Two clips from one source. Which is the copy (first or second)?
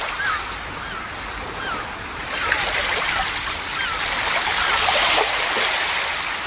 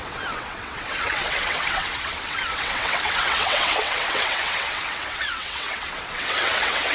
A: second